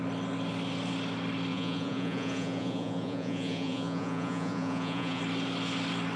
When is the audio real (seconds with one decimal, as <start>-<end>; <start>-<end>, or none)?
0.0-1.5; 5.2-6.2